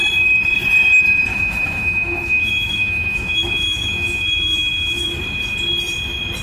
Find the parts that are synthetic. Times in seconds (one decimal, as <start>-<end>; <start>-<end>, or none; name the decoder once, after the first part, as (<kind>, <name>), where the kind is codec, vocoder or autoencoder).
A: 1.3-5.1 (autoencoder, DAC-VAE)